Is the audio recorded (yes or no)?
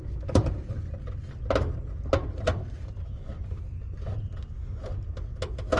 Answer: yes